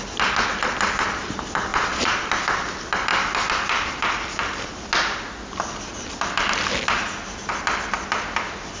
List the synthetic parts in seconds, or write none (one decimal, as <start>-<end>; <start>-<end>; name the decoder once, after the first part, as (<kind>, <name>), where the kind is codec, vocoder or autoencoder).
1.7-2.2 (vocoder, Vocos)